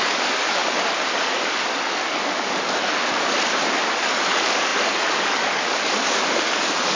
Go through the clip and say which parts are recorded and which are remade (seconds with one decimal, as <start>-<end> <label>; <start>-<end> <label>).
0.0-0.6 remade; 0.6-1.2 recorded; 1.2-3.0 remade; 3.0-3.9 recorded; 3.9-7.0 remade